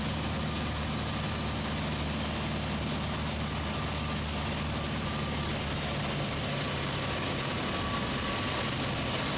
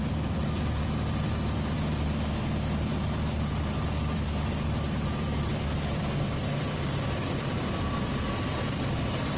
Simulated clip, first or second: second